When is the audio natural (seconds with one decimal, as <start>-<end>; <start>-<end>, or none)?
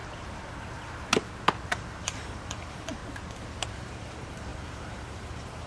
0.0-1.7; 3.0-3.7